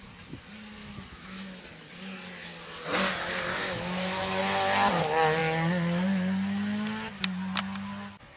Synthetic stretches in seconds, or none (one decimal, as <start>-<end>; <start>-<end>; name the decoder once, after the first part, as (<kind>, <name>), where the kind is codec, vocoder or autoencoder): 0.8-1.6 (autoencoder, DAC-VAE); 3.6-4.4